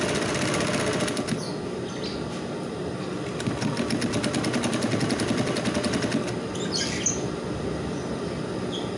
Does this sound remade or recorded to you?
recorded